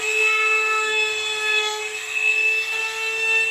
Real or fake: fake